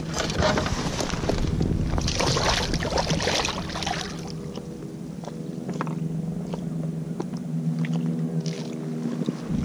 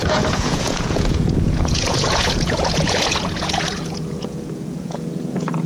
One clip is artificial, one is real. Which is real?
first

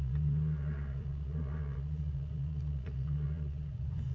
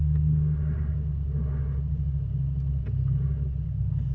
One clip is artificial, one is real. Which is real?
second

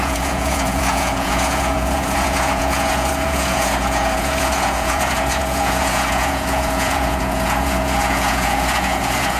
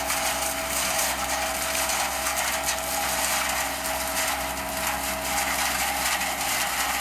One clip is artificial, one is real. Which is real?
second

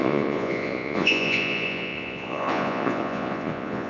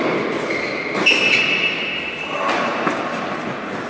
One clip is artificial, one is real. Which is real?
second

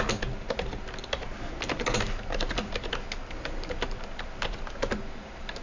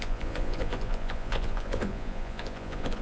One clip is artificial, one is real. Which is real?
first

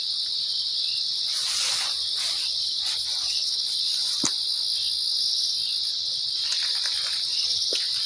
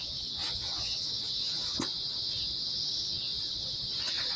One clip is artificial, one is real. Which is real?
first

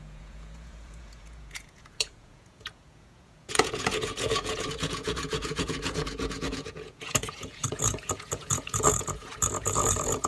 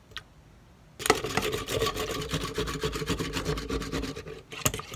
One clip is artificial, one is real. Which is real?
second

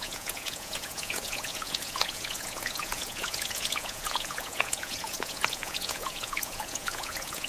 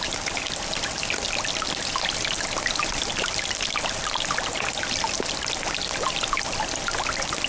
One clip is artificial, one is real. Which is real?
second